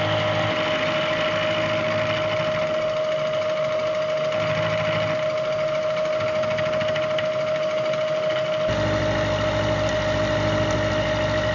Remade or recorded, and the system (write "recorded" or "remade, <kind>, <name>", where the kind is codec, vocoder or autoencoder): recorded